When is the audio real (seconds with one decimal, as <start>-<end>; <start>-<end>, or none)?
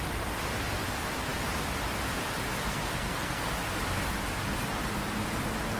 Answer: 0.0-2.7; 3.5-5.8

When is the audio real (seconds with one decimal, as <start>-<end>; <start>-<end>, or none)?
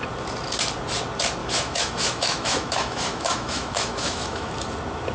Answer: 0.0-1.4; 4.5-5.1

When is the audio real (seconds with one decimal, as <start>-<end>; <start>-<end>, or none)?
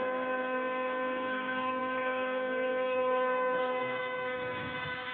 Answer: none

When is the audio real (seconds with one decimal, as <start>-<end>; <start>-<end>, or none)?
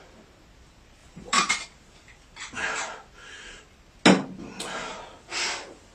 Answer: 0.0-1.0; 1.5-5.9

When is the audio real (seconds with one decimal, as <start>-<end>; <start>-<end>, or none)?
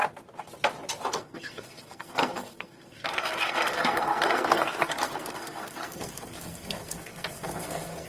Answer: 0.0-1.1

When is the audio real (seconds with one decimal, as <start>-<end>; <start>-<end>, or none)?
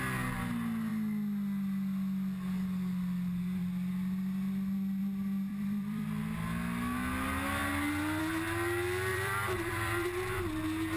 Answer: 0.0-5.5; 6.2-9.1; 10.4-11.0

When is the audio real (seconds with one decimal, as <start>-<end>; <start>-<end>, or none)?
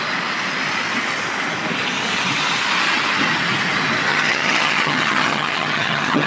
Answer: 0.0-4.1